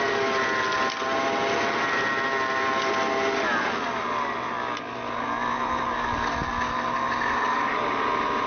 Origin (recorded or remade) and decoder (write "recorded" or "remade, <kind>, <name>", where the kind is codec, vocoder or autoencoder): recorded